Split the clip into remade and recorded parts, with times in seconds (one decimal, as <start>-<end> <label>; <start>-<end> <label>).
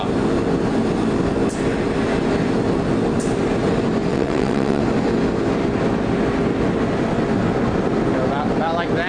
0.0-4.1 recorded; 4.1-4.8 remade; 4.8-9.1 recorded